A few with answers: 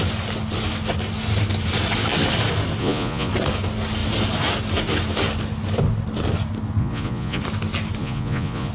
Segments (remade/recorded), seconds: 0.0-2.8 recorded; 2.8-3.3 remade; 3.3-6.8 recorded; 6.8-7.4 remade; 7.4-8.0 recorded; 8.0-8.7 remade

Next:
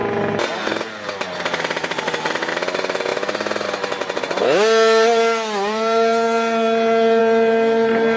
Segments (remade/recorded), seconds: 0.0-8.2 recorded

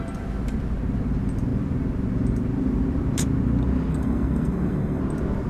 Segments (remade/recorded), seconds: 0.0-3.9 recorded; 3.9-5.0 remade; 5.0-5.5 recorded